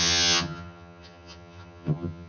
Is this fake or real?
fake